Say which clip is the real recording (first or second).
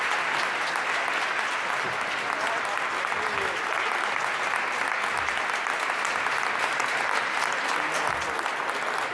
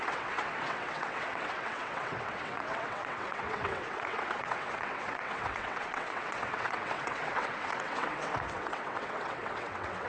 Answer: first